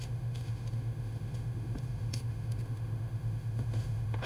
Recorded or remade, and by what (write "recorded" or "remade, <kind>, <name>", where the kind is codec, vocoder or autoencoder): remade, autoencoder, DAC-VAE